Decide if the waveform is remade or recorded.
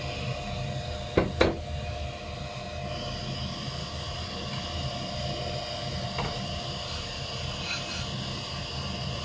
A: recorded